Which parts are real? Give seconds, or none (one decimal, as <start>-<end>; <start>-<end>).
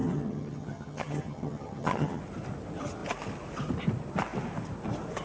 2.2-5.2